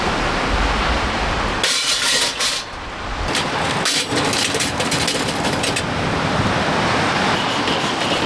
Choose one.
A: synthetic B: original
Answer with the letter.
B